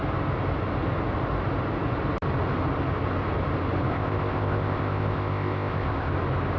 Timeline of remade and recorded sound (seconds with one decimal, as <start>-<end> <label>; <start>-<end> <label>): 0.0-3.9 recorded; 3.9-6.1 remade; 6.1-6.6 recorded